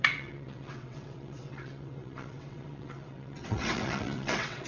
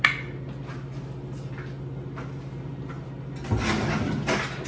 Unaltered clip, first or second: second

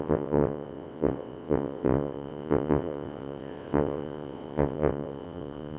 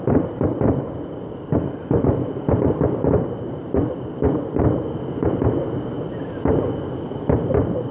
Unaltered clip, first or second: second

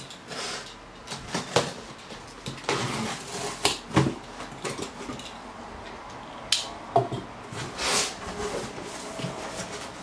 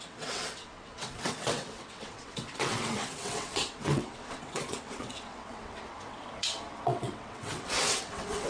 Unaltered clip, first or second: first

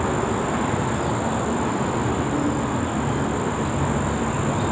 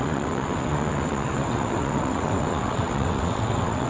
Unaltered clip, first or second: first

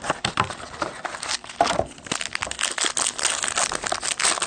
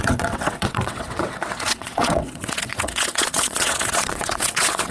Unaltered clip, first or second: first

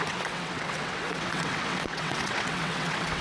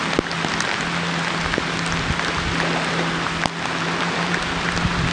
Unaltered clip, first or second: second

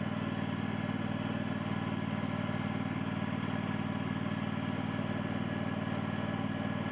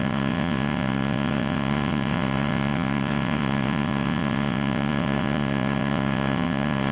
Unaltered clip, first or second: first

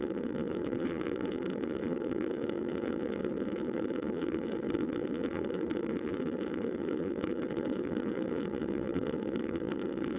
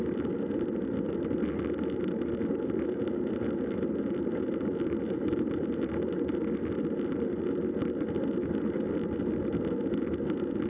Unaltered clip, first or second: second